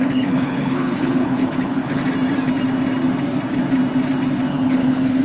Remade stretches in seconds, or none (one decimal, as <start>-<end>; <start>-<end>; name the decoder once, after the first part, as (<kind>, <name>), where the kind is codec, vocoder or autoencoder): 0.0-2.0 (codec, HILCodec); 4.5-5.2